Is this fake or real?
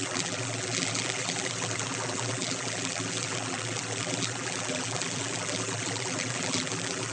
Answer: fake